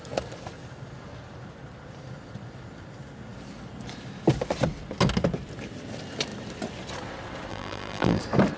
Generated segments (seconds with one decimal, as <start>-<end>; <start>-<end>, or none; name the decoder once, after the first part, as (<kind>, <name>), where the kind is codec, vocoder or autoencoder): 7.5-8.2 (vocoder, BigVGAN v2)